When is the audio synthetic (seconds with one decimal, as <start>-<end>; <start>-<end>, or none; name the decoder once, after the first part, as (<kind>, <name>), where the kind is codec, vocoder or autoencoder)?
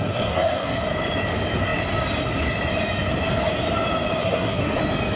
0.0-0.8 (codec, SNAC); 4.2-4.8